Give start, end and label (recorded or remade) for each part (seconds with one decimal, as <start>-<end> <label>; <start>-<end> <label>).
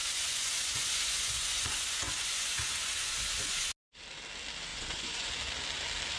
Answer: 0.0-3.7 remade; 3.7-4.7 recorded; 4.7-5.3 remade; 5.3-6.2 recorded